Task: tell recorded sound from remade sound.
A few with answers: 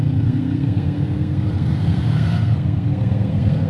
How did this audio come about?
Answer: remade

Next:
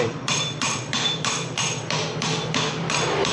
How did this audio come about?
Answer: remade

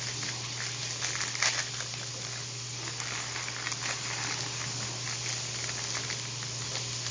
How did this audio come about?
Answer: recorded